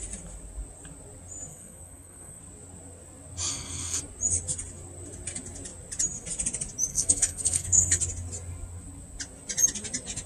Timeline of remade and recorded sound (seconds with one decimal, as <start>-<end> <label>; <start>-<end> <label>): 0.0-1.5 recorded; 1.5-2.4 remade; 2.4-3.5 recorded; 3.5-4.0 remade; 4.0-6.9 recorded; 6.9-8.0 remade; 8.0-10.3 recorded